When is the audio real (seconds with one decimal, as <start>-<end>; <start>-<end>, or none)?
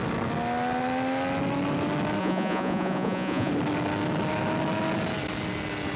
0.0-2.2; 3.5-6.0